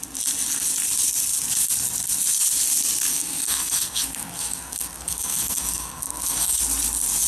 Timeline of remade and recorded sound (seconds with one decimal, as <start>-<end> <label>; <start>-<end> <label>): 0.0-3.1 recorded; 3.1-6.6 remade; 6.6-7.3 recorded